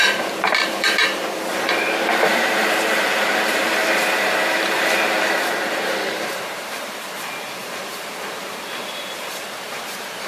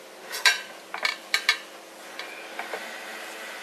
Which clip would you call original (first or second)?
second